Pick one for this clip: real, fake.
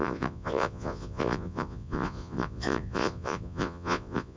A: fake